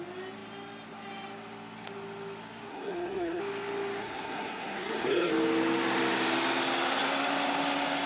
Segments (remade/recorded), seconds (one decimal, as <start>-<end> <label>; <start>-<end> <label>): 0.0-2.7 recorded; 2.7-3.4 remade; 3.4-4.0 recorded; 4.0-5.3 remade; 5.3-8.1 recorded